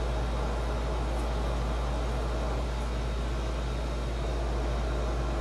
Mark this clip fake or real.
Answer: real